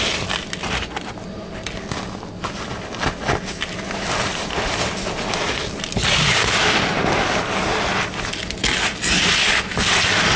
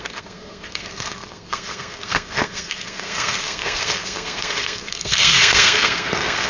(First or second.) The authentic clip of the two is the first